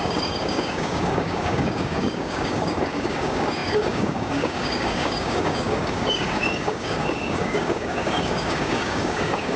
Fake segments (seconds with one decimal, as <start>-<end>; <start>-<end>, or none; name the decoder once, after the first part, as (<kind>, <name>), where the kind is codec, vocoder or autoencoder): 0.0-9.6 (codec, DAC)